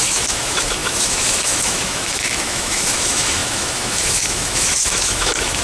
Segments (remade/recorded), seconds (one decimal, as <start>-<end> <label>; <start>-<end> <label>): 0.0-5.6 remade